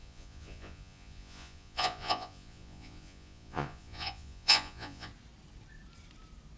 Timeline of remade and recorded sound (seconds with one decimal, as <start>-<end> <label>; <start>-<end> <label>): 0.0-5.1 remade; 5.1-6.6 recorded